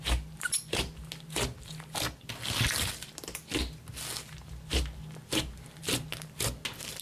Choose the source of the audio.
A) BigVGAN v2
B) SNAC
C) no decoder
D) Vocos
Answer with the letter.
C